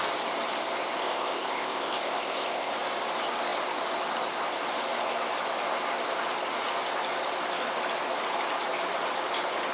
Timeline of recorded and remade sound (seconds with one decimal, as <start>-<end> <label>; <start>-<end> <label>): 0.0-1.0 recorded; 1.0-2.7 remade; 2.7-9.7 recorded